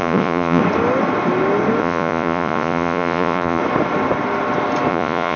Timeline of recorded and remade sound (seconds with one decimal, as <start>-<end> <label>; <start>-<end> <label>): 0.0-0.6 remade; 0.6-1.8 recorded; 1.8-3.6 remade; 3.6-4.9 recorded; 4.9-5.4 remade